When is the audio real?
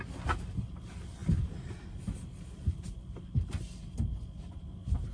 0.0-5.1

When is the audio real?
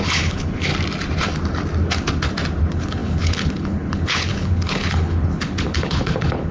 0.7-2.6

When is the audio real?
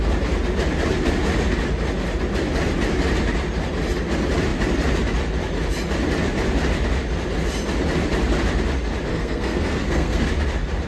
0.0-9.1; 10.3-10.9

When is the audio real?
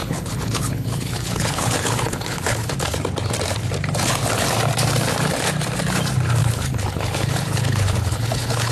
2.7-6.4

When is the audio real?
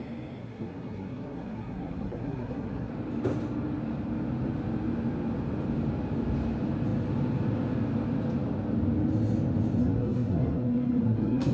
0.0-0.4; 2.9-9.8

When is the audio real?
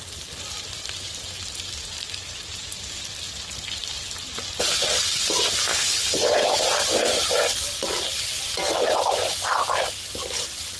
0.0-5.7; 6.6-10.8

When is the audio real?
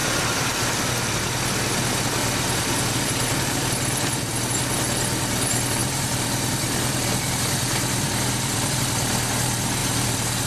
0.9-2.2; 4.5-5.8; 8.8-9.8